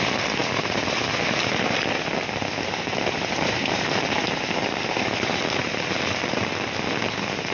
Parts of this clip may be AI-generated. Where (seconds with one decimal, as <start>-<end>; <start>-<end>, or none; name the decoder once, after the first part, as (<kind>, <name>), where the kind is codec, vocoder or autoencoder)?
none